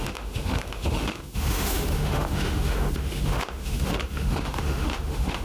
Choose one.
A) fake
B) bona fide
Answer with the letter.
A